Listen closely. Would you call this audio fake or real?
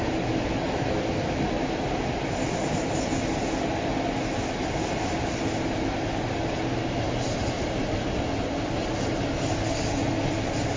real